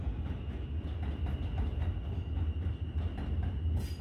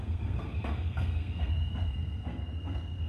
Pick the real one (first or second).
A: first